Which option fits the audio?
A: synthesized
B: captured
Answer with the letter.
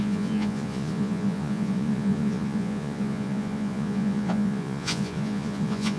A